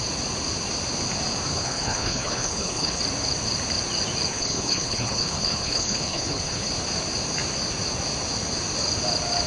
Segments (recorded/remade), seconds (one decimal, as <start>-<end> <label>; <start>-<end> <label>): 0.0-1.5 recorded; 1.5-3.0 remade; 3.0-4.3 recorded; 4.3-6.7 remade; 6.7-9.5 recorded